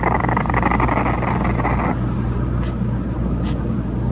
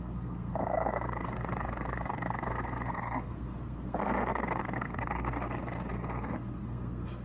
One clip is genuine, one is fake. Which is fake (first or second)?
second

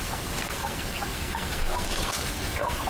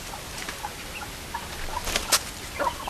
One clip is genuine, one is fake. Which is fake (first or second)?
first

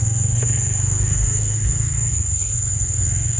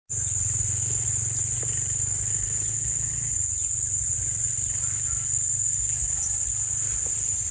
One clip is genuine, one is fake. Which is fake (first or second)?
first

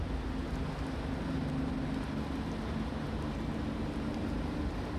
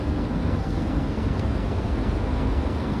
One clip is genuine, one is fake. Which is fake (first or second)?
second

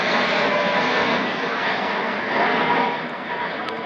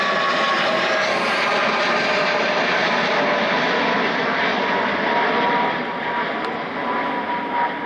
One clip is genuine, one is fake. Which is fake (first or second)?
first